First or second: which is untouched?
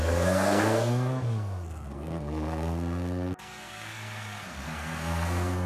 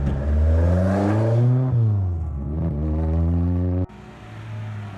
second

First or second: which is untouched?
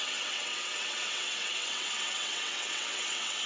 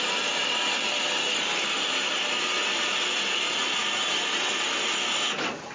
second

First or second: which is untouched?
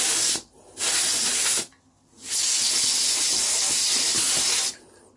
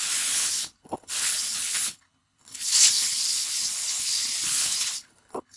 first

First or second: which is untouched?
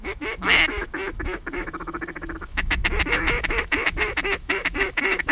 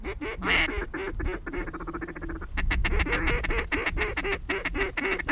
second